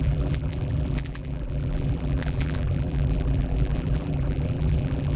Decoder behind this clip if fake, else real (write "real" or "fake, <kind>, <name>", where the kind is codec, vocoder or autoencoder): fake, vocoder, BigVGAN v2